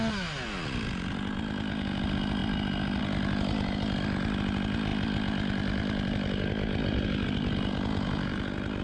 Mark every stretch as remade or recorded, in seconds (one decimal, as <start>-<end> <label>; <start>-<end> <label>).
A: 0.0-8.8 recorded